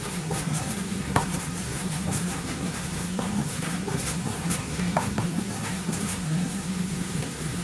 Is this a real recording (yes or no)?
no